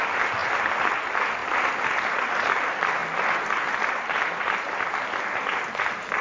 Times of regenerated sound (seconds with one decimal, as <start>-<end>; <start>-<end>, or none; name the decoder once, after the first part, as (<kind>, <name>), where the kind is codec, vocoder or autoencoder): 1.4-2.2 (vocoder, BigVGAN v2)